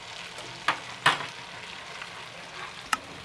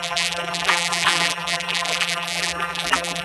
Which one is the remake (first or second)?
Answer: second